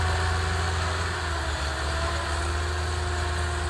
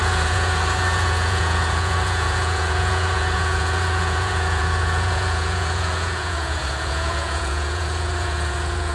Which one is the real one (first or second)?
first